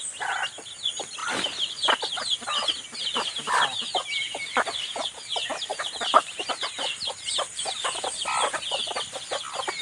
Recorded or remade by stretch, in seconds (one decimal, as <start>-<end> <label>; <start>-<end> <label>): 0.0-5.7 recorded; 5.7-8.2 remade; 8.2-9.8 recorded